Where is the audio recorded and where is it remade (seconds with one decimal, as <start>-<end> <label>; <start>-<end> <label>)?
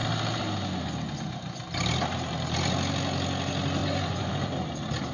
0.0-3.8 recorded; 3.8-4.3 remade; 4.3-5.1 recorded